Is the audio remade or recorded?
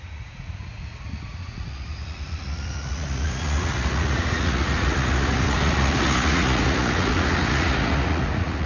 remade